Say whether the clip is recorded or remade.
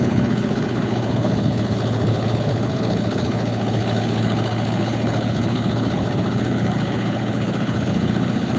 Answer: remade